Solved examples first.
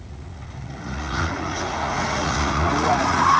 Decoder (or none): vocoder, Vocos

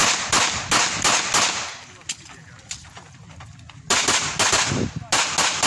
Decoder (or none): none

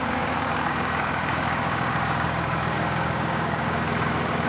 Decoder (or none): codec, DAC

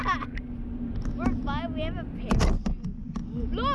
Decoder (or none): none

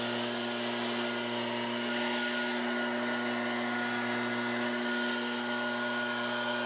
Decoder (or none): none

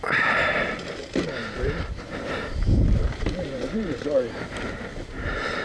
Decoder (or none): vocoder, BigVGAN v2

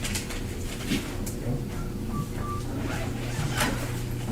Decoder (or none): none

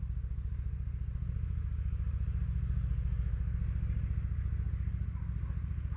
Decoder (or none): none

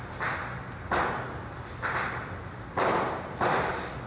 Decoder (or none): none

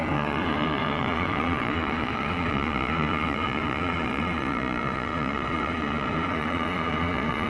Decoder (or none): vocoder, Vocos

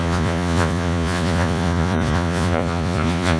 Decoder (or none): vocoder, Vocos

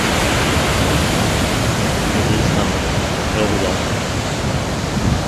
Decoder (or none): none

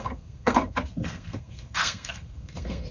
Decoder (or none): codec, SNAC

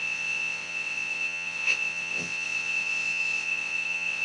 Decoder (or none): vocoder, WaveNeXt